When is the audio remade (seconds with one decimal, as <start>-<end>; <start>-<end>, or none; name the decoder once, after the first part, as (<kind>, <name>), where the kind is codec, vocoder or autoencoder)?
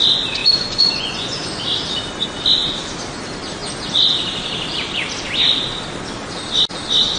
0.4-1.6 (vocoder, Vocos)